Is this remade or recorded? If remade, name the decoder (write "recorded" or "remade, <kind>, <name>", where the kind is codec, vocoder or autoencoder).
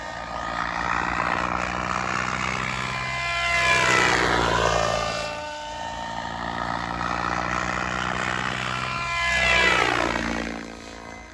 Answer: recorded